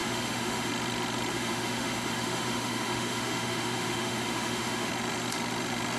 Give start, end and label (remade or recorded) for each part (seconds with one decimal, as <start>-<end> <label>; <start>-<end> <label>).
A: 0.0-0.7 remade; 0.7-1.3 recorded; 1.3-4.9 remade; 4.9-6.0 recorded